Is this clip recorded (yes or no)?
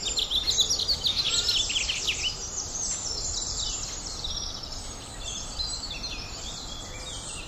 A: yes